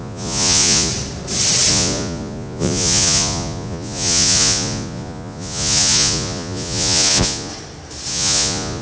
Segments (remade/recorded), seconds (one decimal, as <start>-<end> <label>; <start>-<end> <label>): 0.0-0.9 remade; 0.9-1.7 recorded; 1.7-7.5 remade; 7.5-8.1 recorded; 8.1-8.8 remade